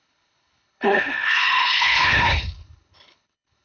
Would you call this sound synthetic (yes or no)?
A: yes